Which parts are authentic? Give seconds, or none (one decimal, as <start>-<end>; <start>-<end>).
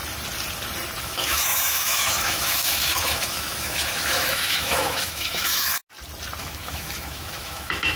0.0-1.0; 5.8-6.4